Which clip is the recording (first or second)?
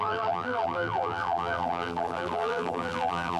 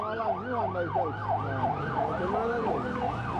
second